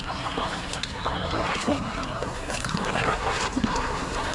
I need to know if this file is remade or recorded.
remade